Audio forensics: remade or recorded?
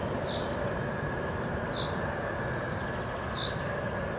recorded